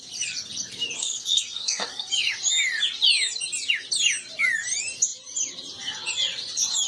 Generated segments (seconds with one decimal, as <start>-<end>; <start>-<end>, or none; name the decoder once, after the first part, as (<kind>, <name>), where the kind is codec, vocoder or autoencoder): 1.0-2.1 (codec, SNAC)